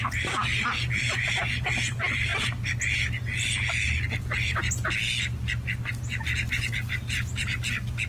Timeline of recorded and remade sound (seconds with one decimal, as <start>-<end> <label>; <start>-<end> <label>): 0.0-8.1 recorded